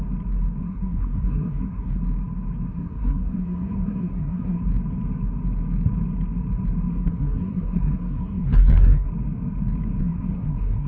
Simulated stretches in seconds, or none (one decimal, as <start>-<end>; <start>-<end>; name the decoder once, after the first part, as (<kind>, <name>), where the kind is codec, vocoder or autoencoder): 0.6-2.0 (codec, SNAC); 2.7-4.6; 6.9-9.1; 10.0-10.9